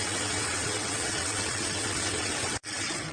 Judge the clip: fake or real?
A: fake